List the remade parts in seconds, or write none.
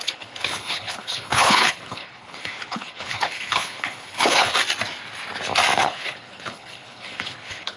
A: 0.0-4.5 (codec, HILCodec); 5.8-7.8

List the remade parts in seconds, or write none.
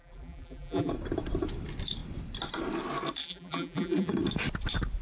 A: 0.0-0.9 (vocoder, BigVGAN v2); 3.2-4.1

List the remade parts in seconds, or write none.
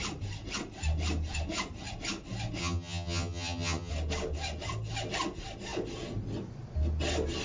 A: 2.6-3.9 (vocoder, HiFi-GAN)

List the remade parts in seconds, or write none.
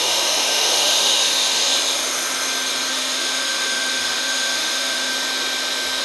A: 0.0-1.7 (autoencoder, DAC-VAE); 2.9-5.1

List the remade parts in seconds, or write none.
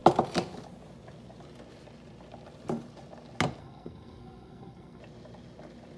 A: 3.6-5.0 (codec, SNAC)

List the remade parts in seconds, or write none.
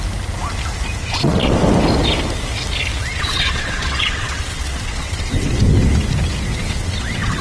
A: 1.0-1.5 (vocoder, WaveNeXt); 3.1-5.5; 6.5-7.4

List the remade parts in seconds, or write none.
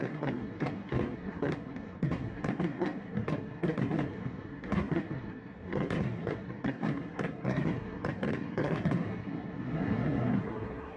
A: 0.0-11.0 (codec, SNAC)